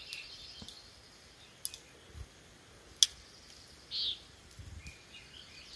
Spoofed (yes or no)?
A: no